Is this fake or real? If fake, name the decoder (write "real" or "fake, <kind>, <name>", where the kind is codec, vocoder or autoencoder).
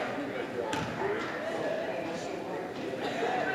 real